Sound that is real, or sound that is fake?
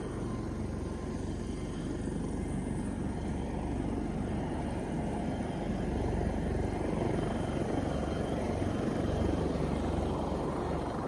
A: real